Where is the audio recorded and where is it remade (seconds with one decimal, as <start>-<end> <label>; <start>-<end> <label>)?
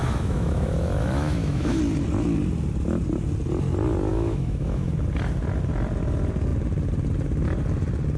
0.0-1.8 remade; 1.8-4.1 recorded; 4.1-4.9 remade; 4.9-8.2 recorded